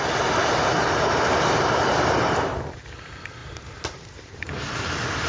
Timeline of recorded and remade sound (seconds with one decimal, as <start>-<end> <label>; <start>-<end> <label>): 0.0-0.4 recorded; 0.4-2.8 remade; 2.8-3.4 recorded; 3.4-5.3 remade